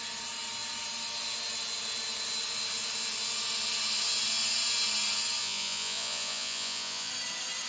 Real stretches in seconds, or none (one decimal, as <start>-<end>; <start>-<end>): 0.0-5.4; 7.1-7.7